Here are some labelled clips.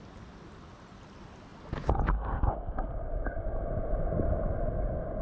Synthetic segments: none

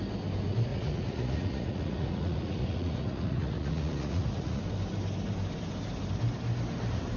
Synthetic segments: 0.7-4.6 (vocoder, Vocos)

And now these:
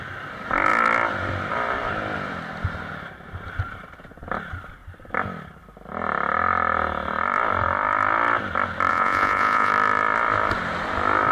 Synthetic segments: 8.9-9.7 (vocoder, Vocos)

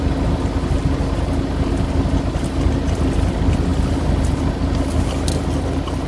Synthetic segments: none